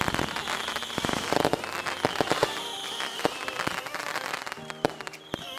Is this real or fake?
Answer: fake